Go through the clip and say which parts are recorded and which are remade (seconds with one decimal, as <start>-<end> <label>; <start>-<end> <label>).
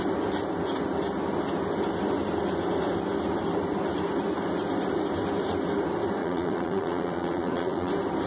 0.0-6.2 recorded; 6.2-7.9 remade; 7.9-8.3 recorded